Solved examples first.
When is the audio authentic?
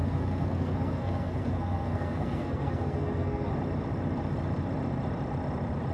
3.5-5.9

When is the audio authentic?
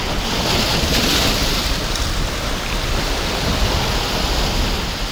0.0-5.1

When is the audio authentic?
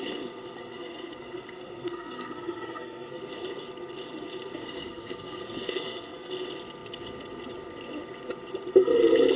0.0-0.6; 3.2-4.6; 6.3-9.4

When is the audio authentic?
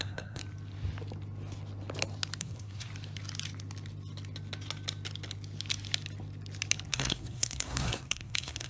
0.4-2.4; 2.9-6.9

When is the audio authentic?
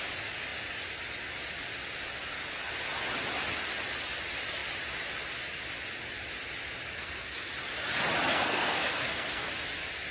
0.0-6.9; 7.5-8.3; 9.5-10.1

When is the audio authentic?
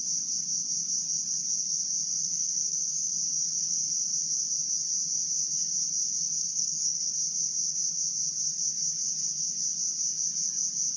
0.0-2.2; 3.1-6.4; 7.1-11.0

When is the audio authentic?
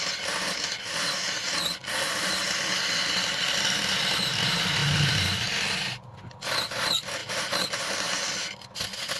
0.0-9.2